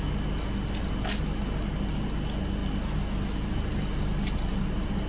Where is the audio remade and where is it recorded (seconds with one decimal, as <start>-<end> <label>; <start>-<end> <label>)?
0.0-5.1 recorded